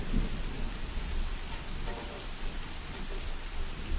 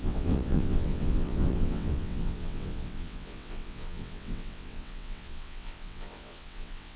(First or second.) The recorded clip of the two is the first